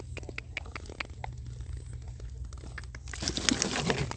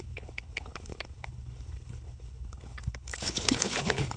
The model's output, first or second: second